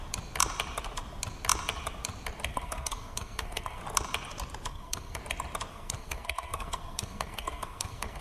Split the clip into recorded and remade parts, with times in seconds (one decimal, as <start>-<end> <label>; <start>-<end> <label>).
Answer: 0.0-2.5 recorded; 2.5-3.8 remade; 3.8-4.7 recorded; 4.7-5.2 remade; 5.2-5.7 recorded; 5.7-8.2 remade